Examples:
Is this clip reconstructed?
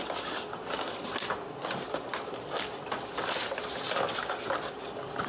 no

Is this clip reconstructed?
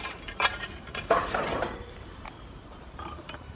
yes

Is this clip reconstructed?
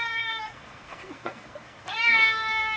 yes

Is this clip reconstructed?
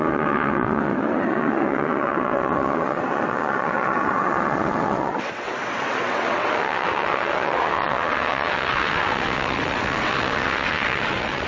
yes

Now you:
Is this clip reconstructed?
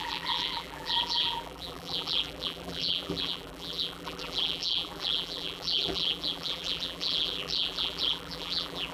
yes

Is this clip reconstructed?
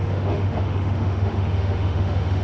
yes